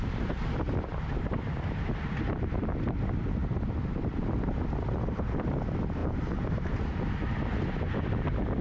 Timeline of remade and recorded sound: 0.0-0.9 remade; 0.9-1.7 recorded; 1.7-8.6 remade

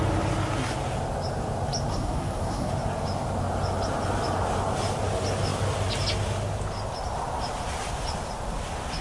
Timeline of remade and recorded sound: 0.0-1.9 recorded; 1.9-2.7 remade; 2.7-9.0 recorded